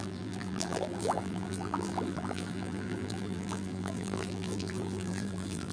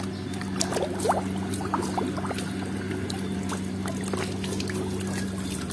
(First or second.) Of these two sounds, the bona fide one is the second